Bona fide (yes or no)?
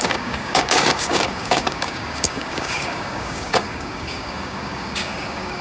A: no